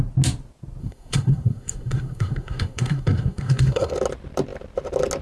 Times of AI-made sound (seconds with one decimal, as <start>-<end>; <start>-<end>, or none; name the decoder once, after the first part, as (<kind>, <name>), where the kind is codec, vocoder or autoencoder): 0.8-3.9 (codec, SNAC)